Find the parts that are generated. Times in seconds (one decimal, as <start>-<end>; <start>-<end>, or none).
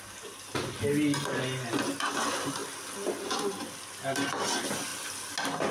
none